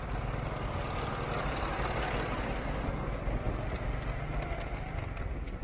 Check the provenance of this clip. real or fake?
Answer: real